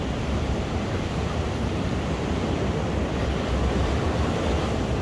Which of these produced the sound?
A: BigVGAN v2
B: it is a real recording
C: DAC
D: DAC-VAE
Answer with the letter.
A